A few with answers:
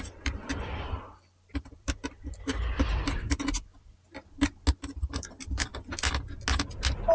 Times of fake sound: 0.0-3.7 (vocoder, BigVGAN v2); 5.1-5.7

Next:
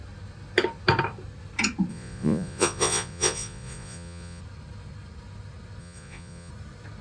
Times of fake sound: 1.9-4.4 (vocoder, Vocos); 5.8-6.5

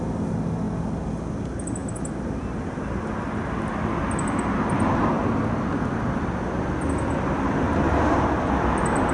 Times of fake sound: none

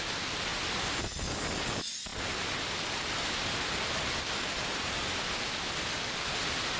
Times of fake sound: none